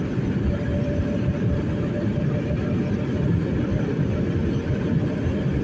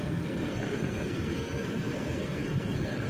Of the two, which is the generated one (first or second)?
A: second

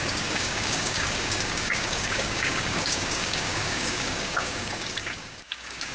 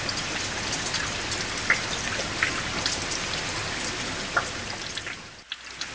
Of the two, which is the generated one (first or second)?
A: first